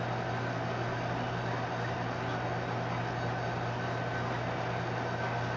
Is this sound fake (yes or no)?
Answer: no